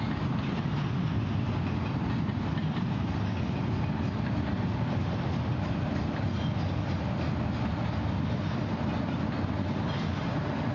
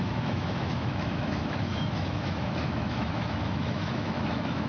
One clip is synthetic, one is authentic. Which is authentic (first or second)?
first